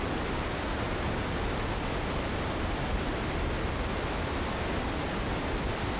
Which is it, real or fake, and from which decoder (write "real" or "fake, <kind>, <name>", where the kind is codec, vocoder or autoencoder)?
real